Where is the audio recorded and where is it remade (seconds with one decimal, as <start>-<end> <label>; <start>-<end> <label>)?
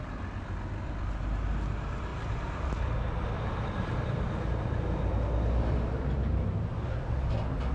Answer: 0.0-2.1 recorded; 2.1-6.7 remade; 6.7-7.7 recorded